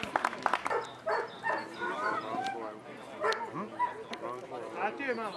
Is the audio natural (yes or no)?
yes